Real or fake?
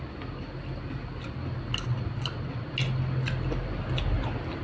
real